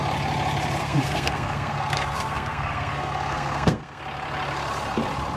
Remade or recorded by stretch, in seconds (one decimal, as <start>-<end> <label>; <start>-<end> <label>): 0.0-0.8 recorded; 0.8-4.0 remade; 4.0-5.4 recorded